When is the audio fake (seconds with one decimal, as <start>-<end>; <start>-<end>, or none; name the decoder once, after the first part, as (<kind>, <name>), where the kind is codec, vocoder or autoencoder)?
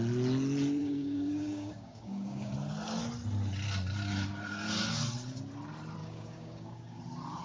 0.8-2.5 (codec, DAC); 6.0-7.0